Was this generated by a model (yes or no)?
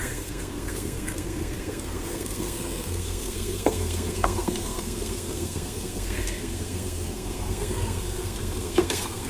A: yes